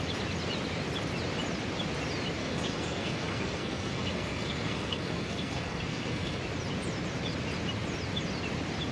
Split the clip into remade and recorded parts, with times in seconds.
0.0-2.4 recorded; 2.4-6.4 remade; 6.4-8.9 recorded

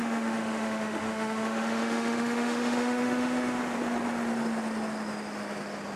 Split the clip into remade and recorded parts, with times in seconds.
0.0-3.6 remade; 3.6-6.0 recorded

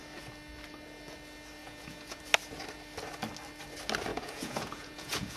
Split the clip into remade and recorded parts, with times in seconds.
0.0-1.6 recorded; 1.6-2.2 remade; 2.2-4.1 recorded; 4.1-5.4 remade

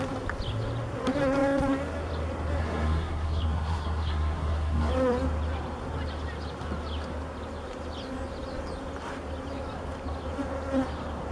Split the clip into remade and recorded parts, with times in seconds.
0.0-2.6 recorded; 2.6-4.9 remade; 4.9-11.3 recorded

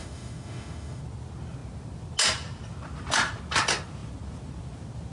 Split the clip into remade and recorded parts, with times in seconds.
0.0-1.0 remade; 1.0-5.1 recorded